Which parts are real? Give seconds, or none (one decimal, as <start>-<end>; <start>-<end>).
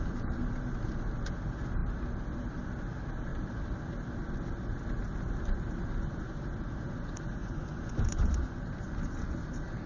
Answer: 0.0-7.4; 8.6-9.9